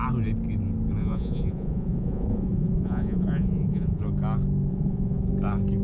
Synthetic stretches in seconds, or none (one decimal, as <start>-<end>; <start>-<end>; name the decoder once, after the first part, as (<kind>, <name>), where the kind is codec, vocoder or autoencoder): 1.0-4.0 (vocoder, Vocos); 4.7-5.3